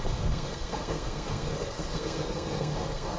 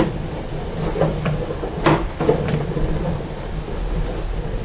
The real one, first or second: second